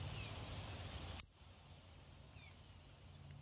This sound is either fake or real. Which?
real